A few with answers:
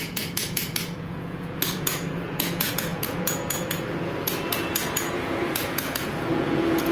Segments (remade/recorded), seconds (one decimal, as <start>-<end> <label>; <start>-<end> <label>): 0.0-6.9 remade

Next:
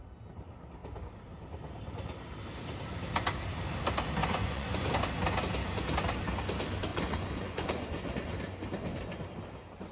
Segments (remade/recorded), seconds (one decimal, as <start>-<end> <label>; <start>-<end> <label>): 0.0-4.2 recorded; 4.2-5.0 remade; 5.0-6.9 recorded; 6.9-8.3 remade; 8.3-9.9 recorded

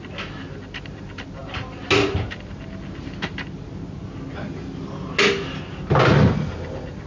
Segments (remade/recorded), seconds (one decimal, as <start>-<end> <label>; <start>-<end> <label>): 0.0-7.1 recorded

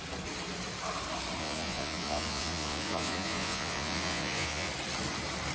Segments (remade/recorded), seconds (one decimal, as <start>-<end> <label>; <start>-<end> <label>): 0.0-1.4 recorded; 1.4-4.7 remade; 4.7-5.5 recorded

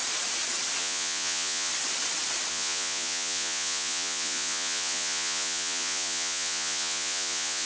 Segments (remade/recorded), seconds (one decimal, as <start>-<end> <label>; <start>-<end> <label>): 0.0-0.8 recorded; 0.8-1.7 remade; 1.7-2.5 recorded; 2.5-7.7 remade

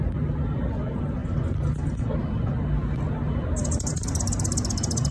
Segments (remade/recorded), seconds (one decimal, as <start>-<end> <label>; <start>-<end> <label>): 0.0-5.1 recorded